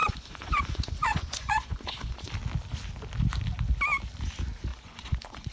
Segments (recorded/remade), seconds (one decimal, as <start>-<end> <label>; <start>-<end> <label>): 0.0-2.3 remade; 2.3-4.7 recorded; 4.7-5.5 remade